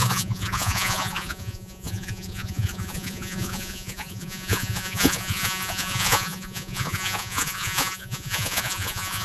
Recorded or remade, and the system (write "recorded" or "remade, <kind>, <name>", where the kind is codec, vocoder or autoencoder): remade, vocoder, Vocos